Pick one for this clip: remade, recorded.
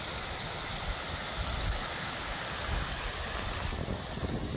recorded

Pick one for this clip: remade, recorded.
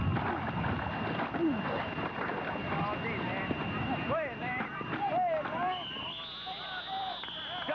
recorded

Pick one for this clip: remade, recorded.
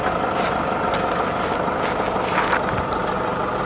recorded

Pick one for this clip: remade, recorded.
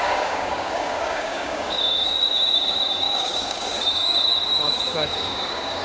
remade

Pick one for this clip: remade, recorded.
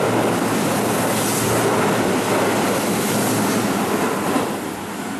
recorded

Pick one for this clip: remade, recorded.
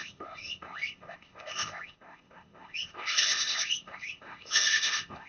remade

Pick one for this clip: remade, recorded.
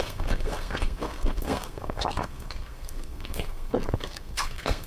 remade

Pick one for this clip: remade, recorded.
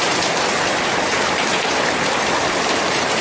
remade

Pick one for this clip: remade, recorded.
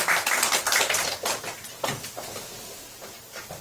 recorded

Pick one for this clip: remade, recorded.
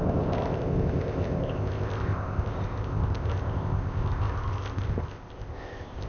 remade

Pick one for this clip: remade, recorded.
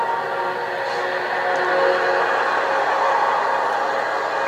recorded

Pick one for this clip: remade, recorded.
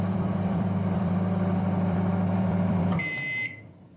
remade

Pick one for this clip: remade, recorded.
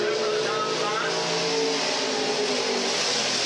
recorded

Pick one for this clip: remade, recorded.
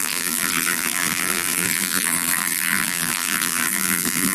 remade